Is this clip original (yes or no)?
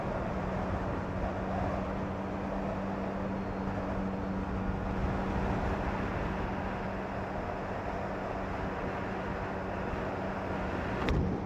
yes